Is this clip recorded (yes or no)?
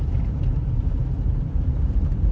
no